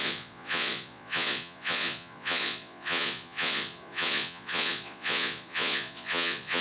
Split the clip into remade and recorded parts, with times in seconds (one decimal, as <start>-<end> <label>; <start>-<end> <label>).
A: 0.0-6.6 remade